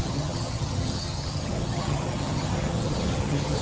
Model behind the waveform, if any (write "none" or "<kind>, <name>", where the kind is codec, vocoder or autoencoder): vocoder, HiFi-GAN